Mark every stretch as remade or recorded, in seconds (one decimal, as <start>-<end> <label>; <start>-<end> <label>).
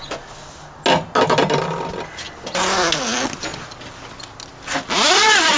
0.0-5.6 recorded